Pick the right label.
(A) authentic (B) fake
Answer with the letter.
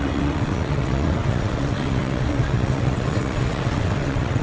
B